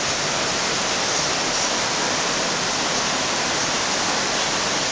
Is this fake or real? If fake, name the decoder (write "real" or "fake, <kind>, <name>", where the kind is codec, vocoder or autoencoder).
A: real